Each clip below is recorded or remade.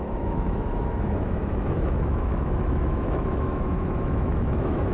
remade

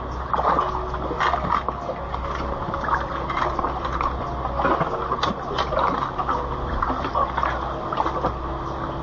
recorded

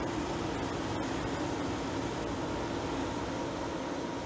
recorded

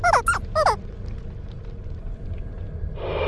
recorded